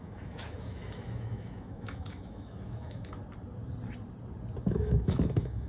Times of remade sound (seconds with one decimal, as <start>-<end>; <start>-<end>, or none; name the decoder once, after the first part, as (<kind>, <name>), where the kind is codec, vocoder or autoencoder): 0.0-3.2 (autoencoder, DAC-VAE); 4.6-5.7